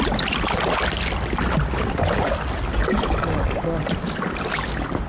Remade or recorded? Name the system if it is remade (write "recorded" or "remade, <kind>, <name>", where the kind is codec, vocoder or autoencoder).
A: recorded